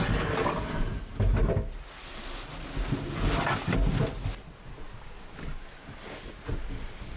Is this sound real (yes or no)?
yes